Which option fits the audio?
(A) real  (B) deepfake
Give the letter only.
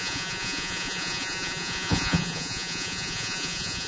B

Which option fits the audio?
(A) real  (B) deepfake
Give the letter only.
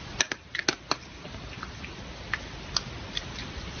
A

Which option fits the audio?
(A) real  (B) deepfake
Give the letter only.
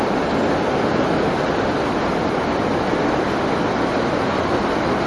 A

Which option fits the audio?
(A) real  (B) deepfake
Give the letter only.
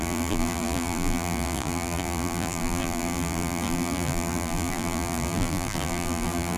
B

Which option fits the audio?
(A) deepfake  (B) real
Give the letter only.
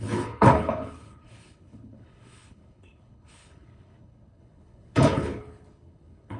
A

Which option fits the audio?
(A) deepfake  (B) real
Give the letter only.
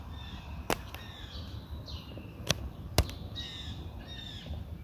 B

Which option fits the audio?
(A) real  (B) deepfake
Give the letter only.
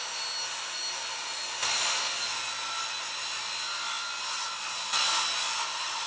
A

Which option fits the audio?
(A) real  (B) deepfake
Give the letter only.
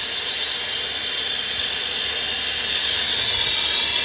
A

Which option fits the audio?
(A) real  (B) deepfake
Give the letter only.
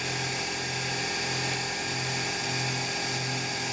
A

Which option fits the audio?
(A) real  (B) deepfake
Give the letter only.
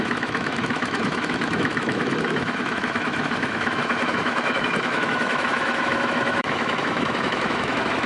B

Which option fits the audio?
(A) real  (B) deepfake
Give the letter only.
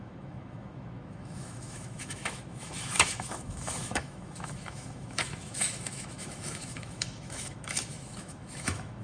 B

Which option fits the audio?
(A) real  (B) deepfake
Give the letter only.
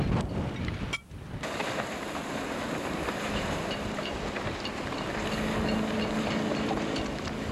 A